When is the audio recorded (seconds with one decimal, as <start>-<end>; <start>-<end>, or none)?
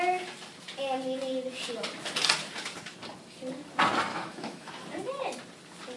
0.0-4.1; 4.7-6.0